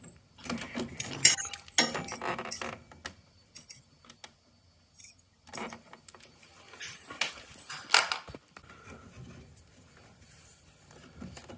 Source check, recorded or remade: recorded